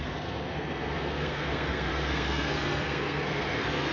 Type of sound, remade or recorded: remade